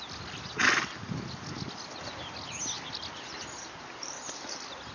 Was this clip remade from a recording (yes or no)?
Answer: no